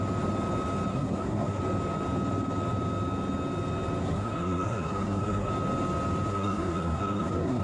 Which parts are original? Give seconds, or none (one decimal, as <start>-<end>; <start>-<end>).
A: 0.0-0.9; 1.6-4.0; 5.5-6.3